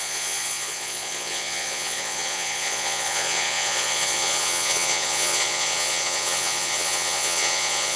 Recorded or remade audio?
remade